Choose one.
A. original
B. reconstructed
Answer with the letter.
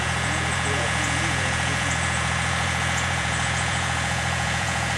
B